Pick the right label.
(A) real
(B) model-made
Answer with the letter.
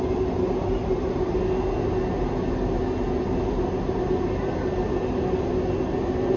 A